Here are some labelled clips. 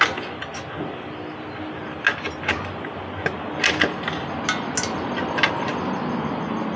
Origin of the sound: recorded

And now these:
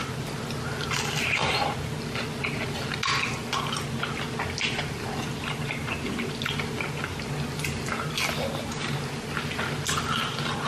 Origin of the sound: recorded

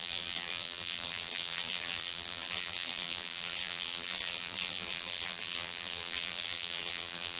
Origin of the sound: remade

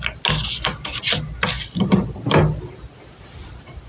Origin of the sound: recorded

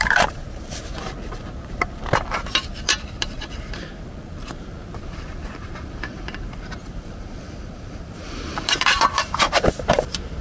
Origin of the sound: remade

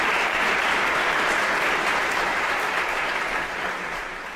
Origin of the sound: remade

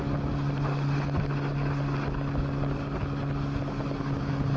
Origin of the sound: recorded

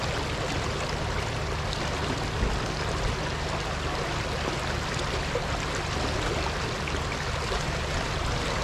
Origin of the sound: recorded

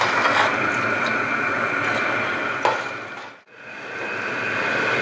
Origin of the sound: recorded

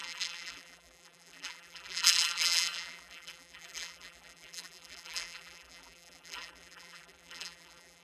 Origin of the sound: remade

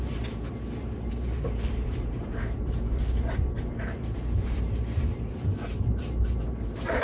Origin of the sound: remade